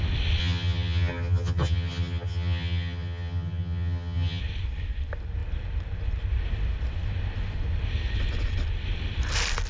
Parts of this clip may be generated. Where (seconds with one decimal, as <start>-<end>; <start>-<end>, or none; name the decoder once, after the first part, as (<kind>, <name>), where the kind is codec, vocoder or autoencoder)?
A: 0.4-4.4 (vocoder, HiFi-GAN)